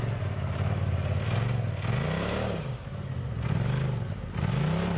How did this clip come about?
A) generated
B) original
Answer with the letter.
B